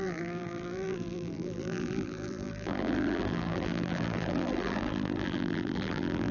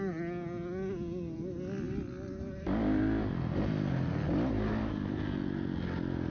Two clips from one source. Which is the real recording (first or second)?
second